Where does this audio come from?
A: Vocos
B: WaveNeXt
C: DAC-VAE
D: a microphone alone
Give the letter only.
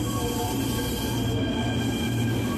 D